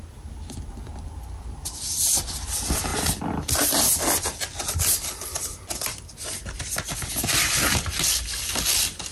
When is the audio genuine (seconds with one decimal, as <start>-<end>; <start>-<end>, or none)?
0.0-2.9; 6.8-9.1